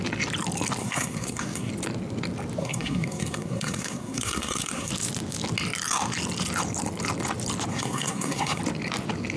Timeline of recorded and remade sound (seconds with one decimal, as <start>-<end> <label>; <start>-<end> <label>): 0.0-0.8 recorded; 0.8-1.7 remade; 1.7-2.6 recorded; 2.6-4.9 remade; 4.9-7.7 recorded; 7.7-8.6 remade; 8.6-9.4 recorded